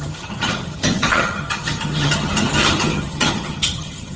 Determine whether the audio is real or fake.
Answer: fake